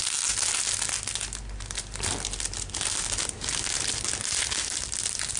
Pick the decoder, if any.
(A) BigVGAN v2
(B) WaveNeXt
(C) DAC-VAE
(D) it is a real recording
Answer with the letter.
D